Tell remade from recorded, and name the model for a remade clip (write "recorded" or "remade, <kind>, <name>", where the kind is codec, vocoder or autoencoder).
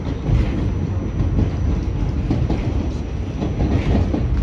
recorded